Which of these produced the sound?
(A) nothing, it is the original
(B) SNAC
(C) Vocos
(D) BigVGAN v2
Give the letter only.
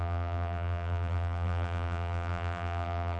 D